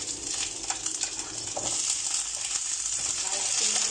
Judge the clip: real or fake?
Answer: real